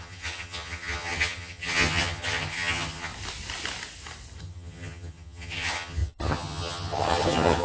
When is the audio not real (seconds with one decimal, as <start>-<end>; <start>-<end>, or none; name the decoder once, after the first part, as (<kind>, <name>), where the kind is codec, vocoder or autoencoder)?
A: 0.0-3.1 (vocoder, HiFi-GAN); 4.4-7.6